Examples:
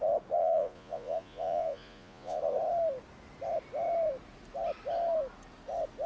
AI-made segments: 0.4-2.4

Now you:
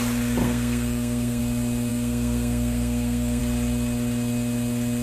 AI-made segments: 0.4-1.4; 1.9-3.4

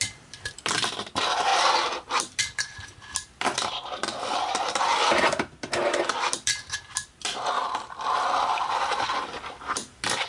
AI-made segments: 0.0-10.3

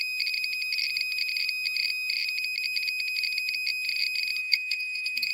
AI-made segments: 4.4-5.3